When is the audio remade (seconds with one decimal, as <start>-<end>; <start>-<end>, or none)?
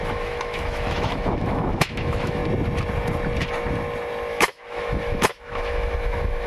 0.0-2.4; 4.3-6.5